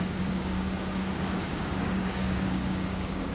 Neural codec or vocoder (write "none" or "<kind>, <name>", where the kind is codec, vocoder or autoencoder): codec, DAC